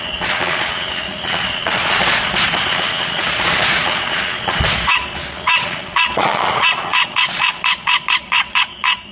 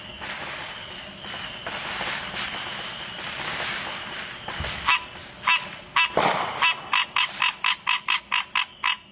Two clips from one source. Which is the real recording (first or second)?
second